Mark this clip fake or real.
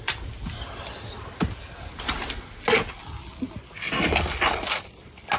real